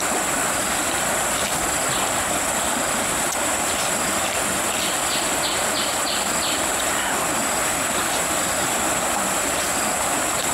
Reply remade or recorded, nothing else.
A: recorded